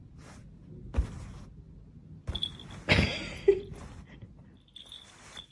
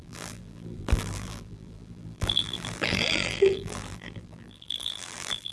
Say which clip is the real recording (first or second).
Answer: first